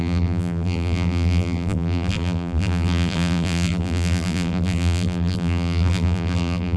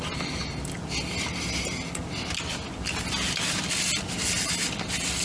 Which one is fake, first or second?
first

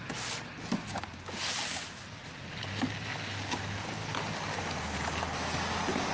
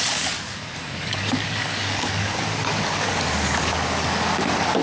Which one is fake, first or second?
second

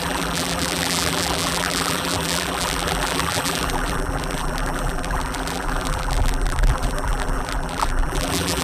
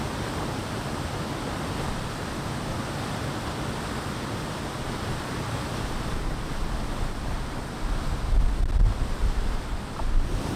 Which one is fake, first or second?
first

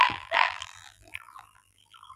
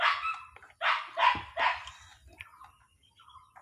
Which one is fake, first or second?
first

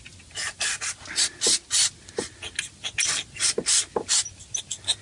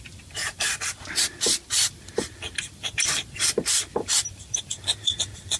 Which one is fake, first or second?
second